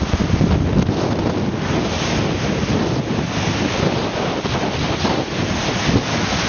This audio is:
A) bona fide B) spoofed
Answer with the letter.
A